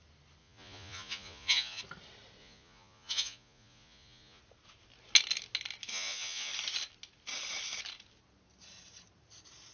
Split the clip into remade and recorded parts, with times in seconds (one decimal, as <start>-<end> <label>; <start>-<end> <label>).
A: 0.0-0.4 recorded; 0.4-1.8 remade; 1.8-2.4 recorded; 2.4-4.4 remade; 4.4-5.9 recorded; 5.9-6.5 remade; 6.5-9.7 recorded